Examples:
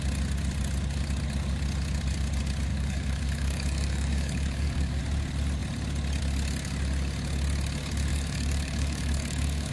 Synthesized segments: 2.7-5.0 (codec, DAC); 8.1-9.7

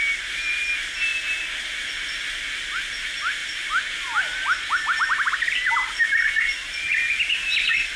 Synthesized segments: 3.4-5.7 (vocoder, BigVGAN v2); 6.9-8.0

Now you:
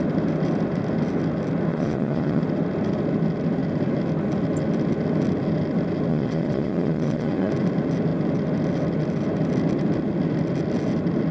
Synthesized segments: 1.7-2.4 (vocoder, Vocos); 6.1-7.5

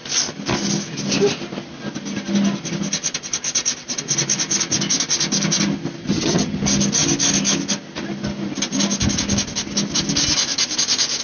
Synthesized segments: 6.0-6.6 (vocoder, HiFi-GAN)

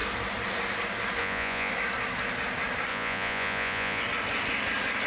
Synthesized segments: 1.2-1.7 (vocoder, Vocos); 2.9-4.0

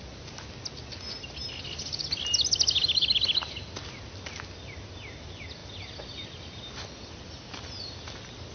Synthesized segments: none